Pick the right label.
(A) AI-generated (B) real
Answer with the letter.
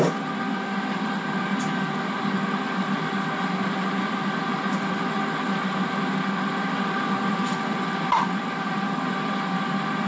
A